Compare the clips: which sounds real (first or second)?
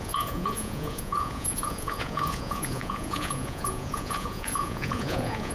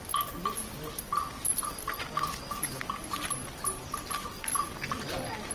second